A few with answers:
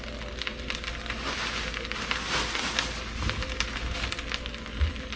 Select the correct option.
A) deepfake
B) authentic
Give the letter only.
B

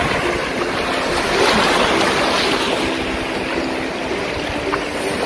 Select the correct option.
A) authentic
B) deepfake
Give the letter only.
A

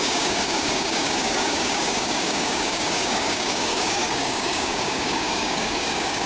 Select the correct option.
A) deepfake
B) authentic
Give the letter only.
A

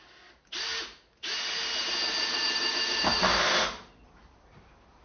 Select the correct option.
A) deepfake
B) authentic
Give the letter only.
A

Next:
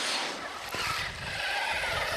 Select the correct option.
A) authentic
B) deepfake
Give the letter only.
A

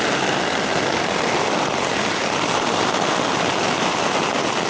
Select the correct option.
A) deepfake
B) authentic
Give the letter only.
B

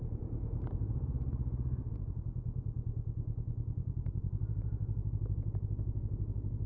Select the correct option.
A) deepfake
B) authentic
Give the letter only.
A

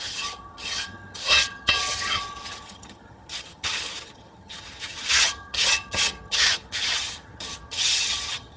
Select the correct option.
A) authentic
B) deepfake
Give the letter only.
B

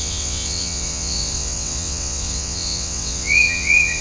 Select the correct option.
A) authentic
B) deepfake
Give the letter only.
B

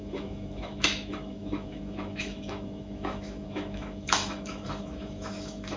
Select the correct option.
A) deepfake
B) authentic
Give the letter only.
A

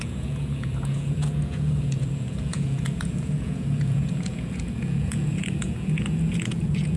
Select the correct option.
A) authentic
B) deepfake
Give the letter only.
B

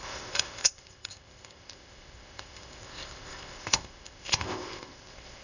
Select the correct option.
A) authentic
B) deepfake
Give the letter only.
B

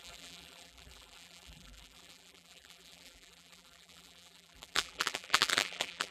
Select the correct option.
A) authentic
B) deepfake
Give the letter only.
B